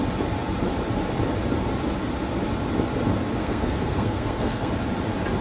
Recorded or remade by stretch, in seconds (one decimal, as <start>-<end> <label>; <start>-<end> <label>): 0.0-3.4 recorded; 3.4-4.7 remade; 4.7-5.4 recorded